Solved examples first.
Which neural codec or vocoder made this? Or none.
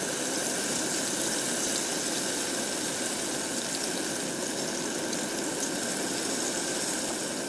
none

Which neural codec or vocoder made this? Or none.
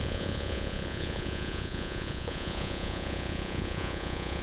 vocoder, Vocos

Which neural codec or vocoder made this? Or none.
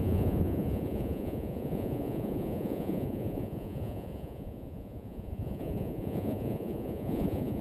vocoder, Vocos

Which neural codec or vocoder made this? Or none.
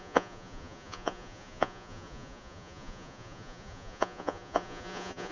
vocoder, Vocos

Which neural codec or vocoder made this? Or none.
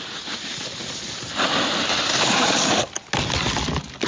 none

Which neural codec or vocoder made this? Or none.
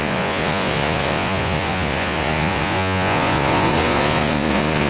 vocoder, Vocos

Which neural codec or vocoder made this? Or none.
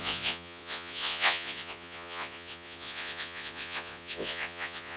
vocoder, Vocos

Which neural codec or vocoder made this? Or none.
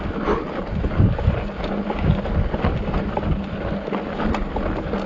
none